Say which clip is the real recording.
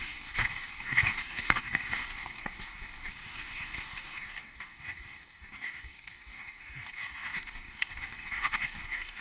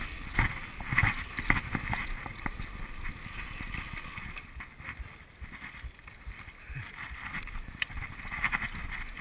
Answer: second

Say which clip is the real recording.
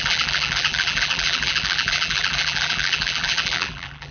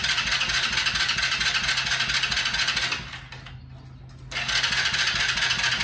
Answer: second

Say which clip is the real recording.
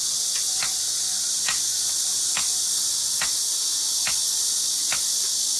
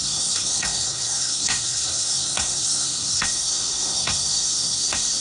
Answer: first